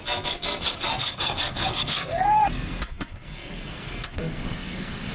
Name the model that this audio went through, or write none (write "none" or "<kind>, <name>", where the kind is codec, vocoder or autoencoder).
codec, SNAC